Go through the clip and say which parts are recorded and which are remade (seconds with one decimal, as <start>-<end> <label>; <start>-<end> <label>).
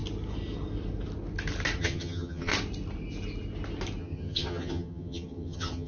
0.0-1.8 recorded; 1.8-2.5 remade; 2.5-4.0 recorded; 4.0-5.9 remade